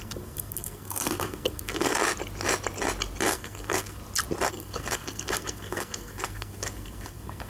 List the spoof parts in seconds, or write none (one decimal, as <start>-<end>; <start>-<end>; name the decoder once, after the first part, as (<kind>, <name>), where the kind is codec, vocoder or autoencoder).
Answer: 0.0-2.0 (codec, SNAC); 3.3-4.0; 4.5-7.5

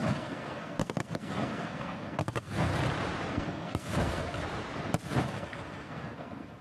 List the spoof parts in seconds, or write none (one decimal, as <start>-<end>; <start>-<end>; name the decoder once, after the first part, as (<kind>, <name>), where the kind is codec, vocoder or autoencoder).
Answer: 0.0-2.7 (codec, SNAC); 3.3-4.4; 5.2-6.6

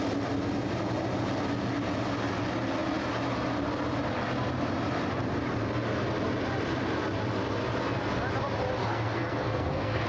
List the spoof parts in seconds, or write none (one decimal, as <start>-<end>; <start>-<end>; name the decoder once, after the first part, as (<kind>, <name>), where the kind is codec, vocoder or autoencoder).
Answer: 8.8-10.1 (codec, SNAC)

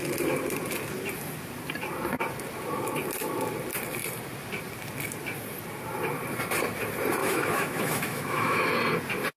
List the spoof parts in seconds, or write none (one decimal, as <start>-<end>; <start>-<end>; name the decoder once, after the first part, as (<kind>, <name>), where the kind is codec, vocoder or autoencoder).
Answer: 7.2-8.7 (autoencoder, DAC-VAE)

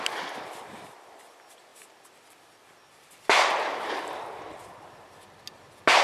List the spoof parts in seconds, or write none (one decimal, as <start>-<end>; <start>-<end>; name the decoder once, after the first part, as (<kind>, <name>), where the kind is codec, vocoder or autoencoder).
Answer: none

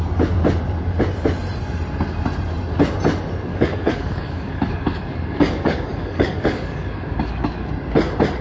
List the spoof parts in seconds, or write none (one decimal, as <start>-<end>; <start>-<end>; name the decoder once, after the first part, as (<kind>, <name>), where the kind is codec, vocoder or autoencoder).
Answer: 3.5-7.7 (codec, DAC)

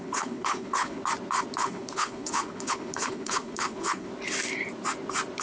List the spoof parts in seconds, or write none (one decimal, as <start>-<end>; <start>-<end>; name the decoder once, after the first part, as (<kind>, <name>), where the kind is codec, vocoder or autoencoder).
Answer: 0.0-1.0 (codec, HILCodec); 1.6-4.1